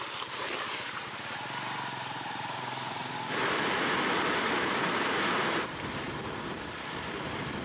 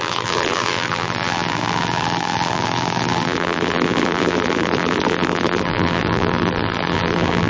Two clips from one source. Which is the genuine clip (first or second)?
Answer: first